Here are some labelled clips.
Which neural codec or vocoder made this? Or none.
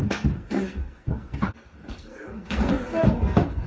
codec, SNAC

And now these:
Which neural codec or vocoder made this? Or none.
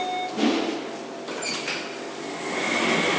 none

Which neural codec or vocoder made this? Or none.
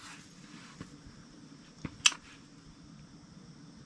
none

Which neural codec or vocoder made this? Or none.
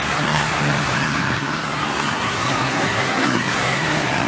codec, SNAC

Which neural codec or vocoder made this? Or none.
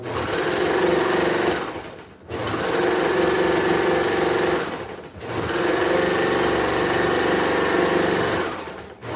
none